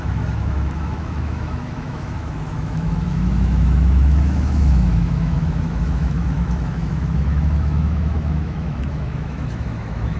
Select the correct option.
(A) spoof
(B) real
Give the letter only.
A